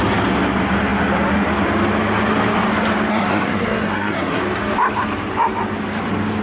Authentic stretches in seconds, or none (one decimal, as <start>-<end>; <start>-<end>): 0.0-3.1; 4.4-6.4